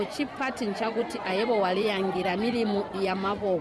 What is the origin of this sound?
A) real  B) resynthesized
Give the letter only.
B